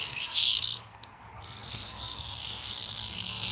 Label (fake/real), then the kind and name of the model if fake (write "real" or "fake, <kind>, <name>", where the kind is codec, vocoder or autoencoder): fake, codec, SNAC